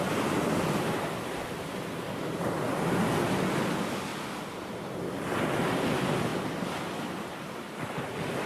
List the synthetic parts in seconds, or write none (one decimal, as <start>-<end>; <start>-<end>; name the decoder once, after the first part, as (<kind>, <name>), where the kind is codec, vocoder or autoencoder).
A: 4.1-5.0 (vocoder, BigVGAN v2); 6.3-8.5